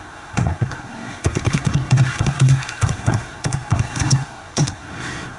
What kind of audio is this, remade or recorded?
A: remade